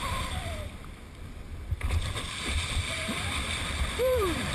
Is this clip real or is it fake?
fake